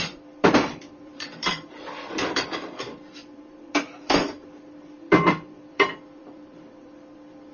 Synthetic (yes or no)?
yes